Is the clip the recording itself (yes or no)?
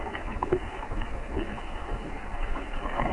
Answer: no